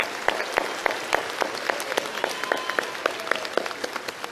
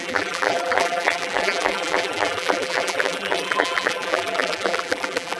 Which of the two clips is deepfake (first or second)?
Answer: second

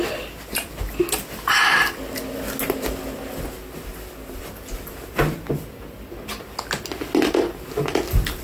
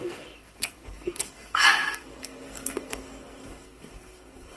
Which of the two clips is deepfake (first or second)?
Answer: second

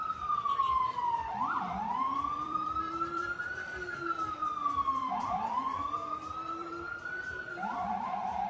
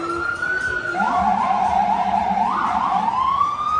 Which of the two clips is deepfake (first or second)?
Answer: first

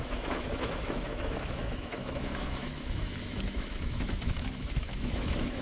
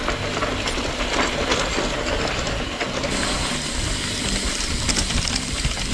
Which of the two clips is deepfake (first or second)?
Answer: first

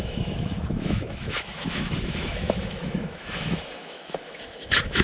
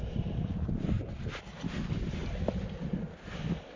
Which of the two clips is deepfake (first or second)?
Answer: first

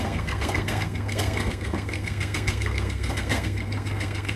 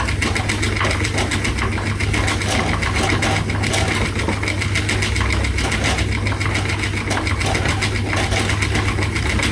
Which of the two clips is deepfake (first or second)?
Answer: first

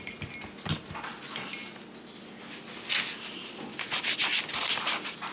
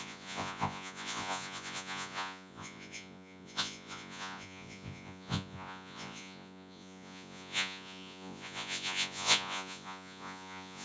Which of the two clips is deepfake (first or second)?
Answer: second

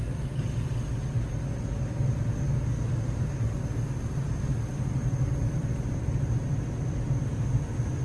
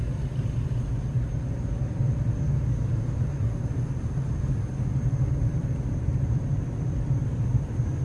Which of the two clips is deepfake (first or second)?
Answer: second